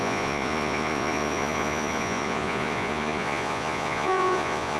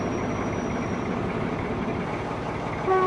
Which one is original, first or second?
second